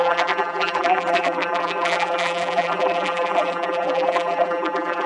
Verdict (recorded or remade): remade